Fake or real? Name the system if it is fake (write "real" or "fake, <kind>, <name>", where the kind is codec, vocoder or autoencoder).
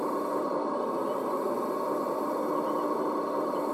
fake, vocoder, BigVGAN v2